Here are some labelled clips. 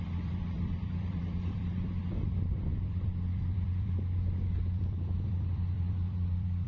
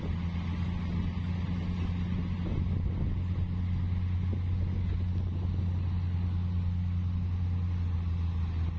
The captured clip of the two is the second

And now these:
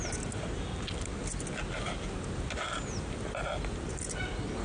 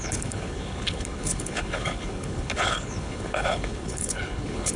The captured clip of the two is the first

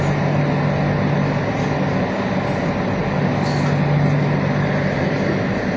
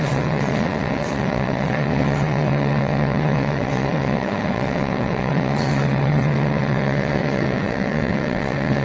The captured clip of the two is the first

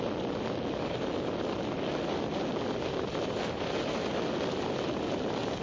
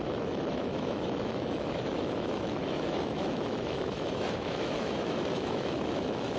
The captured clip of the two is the first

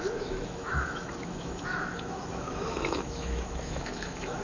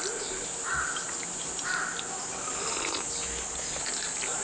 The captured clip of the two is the second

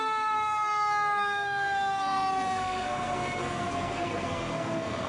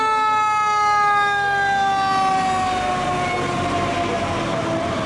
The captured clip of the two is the second